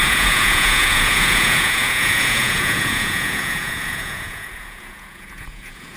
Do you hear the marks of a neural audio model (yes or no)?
yes